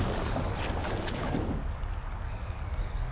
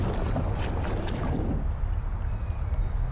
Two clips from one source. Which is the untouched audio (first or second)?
second